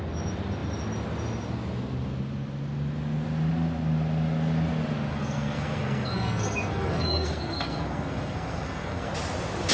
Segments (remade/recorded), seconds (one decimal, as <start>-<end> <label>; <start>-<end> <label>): 0.0-5.1 recorded; 5.1-9.1 remade; 9.1-9.7 recorded